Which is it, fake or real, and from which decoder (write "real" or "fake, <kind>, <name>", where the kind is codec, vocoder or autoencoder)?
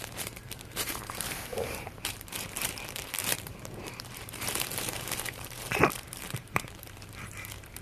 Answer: fake, vocoder, BigVGAN v2